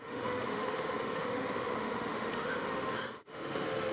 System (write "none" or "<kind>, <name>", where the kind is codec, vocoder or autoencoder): autoencoder, DAC-VAE